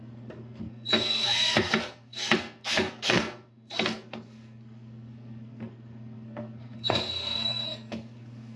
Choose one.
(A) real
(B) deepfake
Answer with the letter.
B